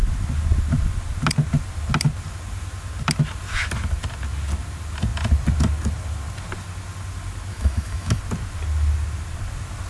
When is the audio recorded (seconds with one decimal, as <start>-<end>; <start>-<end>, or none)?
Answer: 0.0-7.5; 8.2-9.9